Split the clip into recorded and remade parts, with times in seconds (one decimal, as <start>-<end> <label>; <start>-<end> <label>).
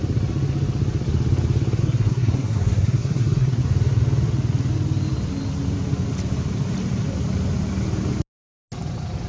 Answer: 0.0-1.8 recorded; 1.8-3.6 remade; 3.6-9.3 recorded